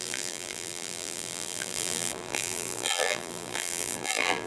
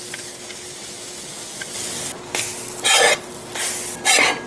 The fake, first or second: first